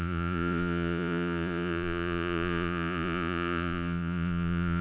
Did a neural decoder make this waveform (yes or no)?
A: yes